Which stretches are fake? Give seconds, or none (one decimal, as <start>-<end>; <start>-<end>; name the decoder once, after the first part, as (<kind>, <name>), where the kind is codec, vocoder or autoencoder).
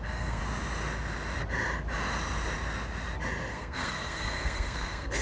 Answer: 0.0-0.4 (codec, SNAC); 3.5-5.2